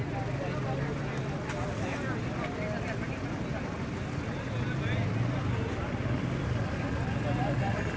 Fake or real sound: real